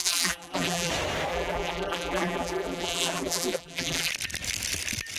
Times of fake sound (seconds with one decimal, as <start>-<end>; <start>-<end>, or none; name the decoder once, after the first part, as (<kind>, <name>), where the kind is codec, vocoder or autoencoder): 0.0-0.9 (vocoder, BigVGAN v2); 1.3-4.1